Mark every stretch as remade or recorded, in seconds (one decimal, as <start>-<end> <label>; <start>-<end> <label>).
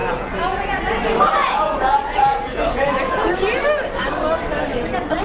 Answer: 0.0-0.8 remade; 0.8-1.4 recorded; 1.4-3.3 remade; 3.3-5.2 recorded